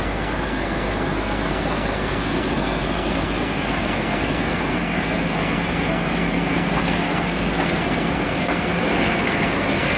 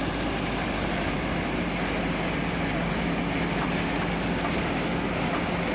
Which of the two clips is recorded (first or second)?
second